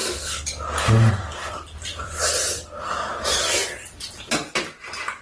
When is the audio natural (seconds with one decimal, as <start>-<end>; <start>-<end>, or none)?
0.0-5.2